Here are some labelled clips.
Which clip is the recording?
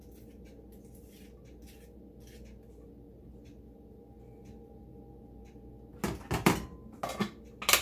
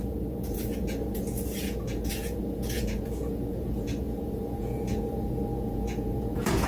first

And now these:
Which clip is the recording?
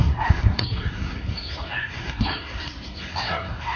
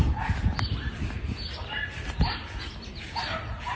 second